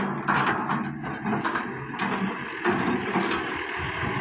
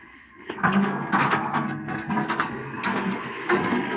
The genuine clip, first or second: first